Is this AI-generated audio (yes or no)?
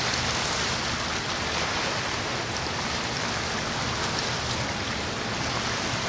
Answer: no